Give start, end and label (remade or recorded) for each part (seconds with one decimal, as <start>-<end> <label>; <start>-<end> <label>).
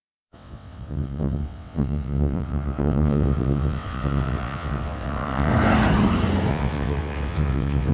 0.0-5.5 remade; 5.5-6.5 recorded; 6.5-7.9 remade